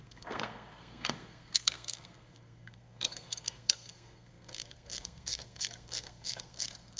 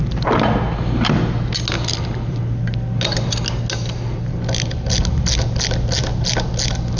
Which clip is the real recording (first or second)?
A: second